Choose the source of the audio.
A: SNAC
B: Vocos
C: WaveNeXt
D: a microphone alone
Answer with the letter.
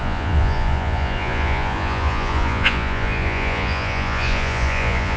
B